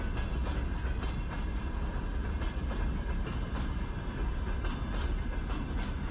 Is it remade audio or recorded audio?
recorded